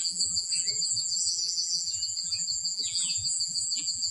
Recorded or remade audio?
remade